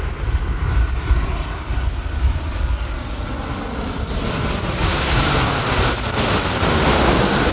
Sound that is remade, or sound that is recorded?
recorded